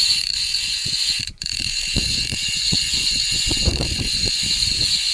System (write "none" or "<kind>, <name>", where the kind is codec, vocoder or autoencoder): vocoder, Vocos